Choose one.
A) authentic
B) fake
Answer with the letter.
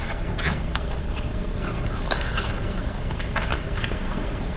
B